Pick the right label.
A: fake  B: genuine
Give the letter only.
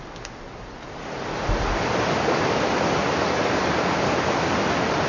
B